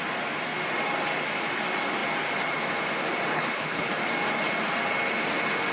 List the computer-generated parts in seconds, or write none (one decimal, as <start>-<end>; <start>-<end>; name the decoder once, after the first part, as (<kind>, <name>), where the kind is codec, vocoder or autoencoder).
3.3-3.9 (codec, HILCodec)